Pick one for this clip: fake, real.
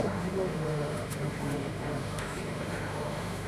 fake